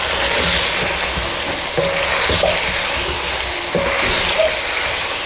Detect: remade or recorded recorded